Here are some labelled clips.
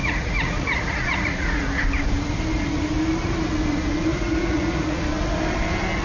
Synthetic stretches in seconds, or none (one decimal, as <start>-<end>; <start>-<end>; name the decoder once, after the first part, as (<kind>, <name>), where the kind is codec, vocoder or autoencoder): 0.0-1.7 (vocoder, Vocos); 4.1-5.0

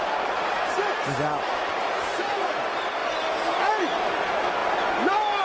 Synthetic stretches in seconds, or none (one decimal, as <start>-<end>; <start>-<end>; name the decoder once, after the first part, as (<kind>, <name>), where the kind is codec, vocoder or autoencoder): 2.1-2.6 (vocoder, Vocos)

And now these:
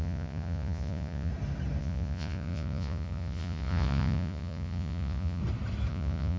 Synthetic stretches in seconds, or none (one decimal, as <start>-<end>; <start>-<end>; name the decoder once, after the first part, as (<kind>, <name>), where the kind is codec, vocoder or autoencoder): 0.0-1.3 (vocoder, Vocos); 1.8-5.4; 5.9-6.4